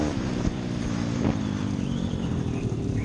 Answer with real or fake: fake